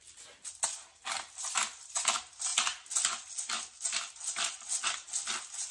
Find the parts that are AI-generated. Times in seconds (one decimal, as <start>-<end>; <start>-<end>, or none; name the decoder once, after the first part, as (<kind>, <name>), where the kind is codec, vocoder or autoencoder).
none